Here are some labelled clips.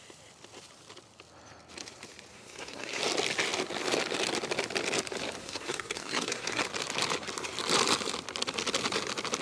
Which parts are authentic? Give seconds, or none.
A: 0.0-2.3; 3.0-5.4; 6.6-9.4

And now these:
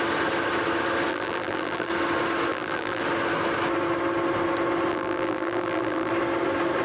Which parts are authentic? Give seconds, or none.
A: 0.0-1.1; 1.9-2.5; 3.0-4.9; 6.1-6.8

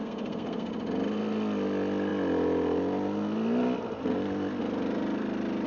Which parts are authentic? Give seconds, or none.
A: 0.7-5.7

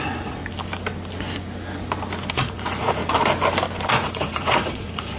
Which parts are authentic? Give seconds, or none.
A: 0.4-2.3; 3.0-3.9

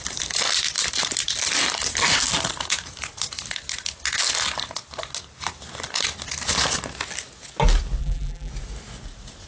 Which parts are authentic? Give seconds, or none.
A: 0.0-8.0; 8.5-9.5